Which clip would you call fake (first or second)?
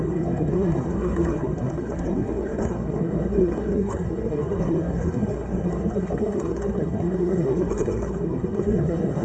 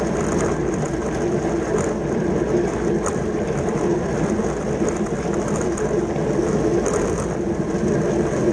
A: first